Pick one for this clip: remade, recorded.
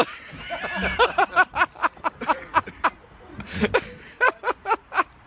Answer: remade